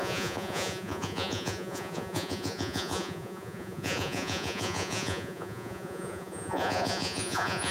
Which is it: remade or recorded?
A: remade